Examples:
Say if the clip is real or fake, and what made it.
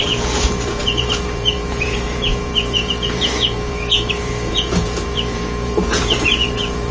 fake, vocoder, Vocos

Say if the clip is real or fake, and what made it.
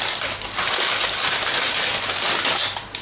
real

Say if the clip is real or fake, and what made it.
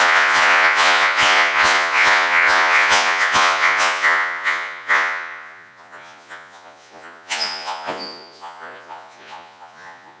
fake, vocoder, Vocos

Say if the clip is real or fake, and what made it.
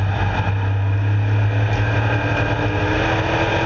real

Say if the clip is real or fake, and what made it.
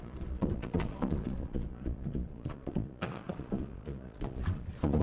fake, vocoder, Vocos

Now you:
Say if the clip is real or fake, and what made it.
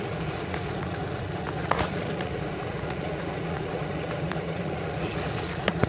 fake, vocoder, Vocos